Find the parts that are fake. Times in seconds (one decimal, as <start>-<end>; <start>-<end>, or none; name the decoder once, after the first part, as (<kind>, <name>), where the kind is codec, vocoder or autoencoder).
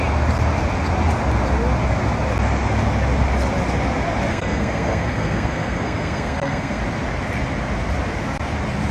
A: 4.3-6.8 (codec, SNAC)